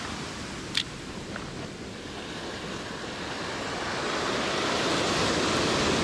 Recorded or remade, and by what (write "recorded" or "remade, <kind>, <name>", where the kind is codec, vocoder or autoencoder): recorded